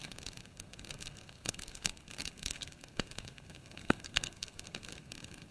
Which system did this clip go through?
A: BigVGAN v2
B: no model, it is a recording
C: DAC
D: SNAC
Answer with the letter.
D